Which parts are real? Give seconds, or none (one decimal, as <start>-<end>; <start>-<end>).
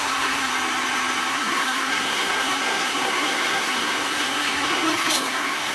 0.5-1.3